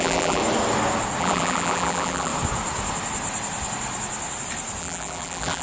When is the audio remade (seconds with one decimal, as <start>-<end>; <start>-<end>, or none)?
0.0-0.4; 1.2-2.3; 4.8-5.6